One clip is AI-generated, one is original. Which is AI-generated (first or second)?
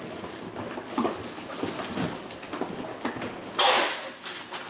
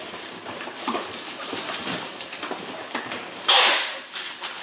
second